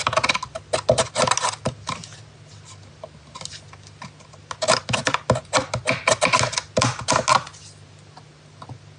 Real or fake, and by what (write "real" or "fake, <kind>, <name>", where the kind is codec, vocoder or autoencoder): real